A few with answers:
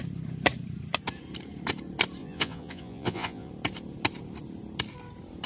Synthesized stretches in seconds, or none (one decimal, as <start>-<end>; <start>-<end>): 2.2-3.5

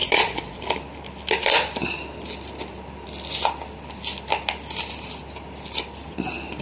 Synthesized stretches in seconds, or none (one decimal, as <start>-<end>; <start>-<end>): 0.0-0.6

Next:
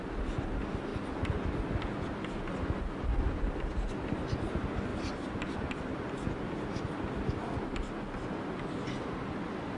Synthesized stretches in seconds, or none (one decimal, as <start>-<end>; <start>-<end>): none